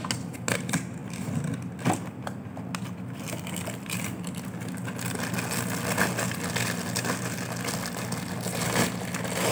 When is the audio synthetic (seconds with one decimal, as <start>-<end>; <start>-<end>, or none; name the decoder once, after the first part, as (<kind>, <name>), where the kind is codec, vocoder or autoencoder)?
none